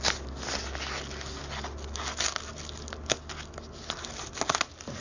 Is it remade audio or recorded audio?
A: recorded